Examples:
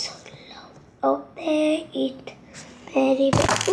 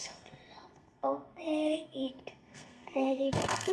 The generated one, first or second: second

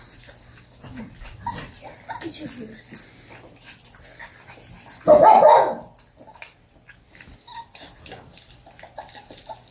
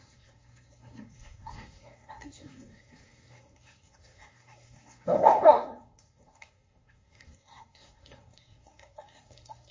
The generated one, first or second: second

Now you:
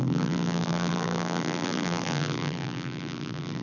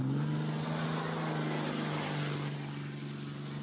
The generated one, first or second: first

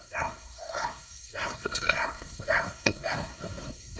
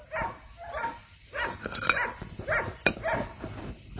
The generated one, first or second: first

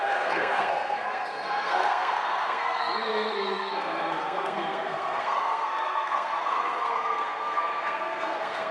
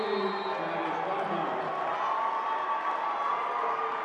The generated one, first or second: first